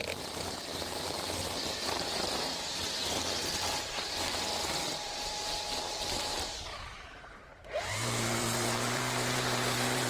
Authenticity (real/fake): fake